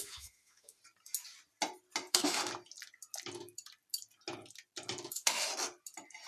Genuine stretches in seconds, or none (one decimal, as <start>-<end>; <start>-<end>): 0.8-2.1; 2.5-5.1; 5.5-6.3